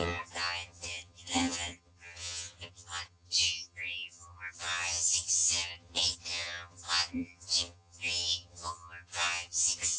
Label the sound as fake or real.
fake